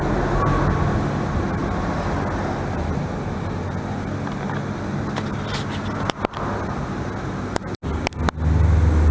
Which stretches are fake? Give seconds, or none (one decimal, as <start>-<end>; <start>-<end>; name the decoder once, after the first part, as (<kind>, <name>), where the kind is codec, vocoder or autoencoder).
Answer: none